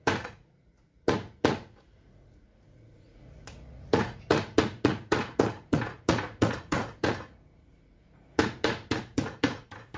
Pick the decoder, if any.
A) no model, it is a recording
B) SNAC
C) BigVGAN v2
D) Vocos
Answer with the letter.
D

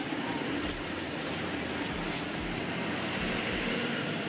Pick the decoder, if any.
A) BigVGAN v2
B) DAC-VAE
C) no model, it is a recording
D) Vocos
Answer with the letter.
A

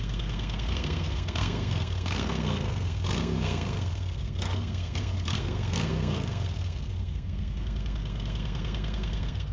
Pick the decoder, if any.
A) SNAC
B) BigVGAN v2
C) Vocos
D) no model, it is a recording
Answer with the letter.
A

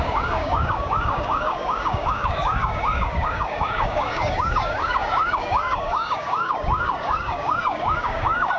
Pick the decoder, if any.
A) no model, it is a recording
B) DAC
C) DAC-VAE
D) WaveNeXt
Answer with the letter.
B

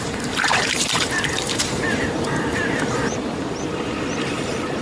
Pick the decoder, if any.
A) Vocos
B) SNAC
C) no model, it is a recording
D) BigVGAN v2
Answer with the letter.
D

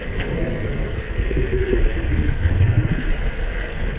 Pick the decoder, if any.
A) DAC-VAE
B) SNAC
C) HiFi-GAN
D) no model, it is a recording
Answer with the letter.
B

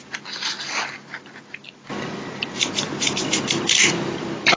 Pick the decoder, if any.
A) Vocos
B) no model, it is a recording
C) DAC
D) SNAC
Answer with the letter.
B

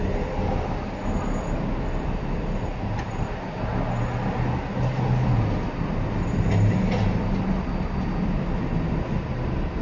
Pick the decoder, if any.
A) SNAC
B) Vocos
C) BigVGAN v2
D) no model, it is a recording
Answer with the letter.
D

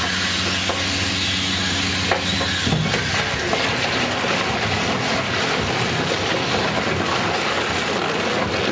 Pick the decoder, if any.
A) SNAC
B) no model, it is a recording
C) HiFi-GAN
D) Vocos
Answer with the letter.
B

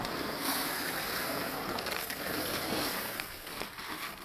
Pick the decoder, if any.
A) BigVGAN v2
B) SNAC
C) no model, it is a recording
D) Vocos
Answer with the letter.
B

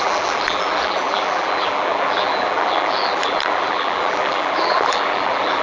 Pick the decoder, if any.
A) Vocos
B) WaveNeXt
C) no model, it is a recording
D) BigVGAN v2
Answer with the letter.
D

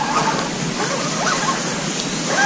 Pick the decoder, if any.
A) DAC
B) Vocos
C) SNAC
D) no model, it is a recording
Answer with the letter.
D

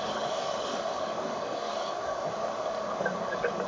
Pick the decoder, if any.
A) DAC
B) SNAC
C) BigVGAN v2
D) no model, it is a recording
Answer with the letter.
A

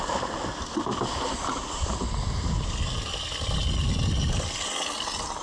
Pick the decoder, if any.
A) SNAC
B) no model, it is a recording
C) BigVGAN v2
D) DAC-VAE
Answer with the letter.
B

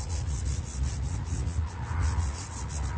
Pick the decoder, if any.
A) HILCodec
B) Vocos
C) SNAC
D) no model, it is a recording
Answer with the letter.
B